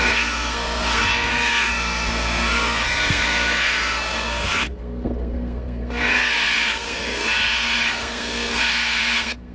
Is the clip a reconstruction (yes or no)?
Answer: yes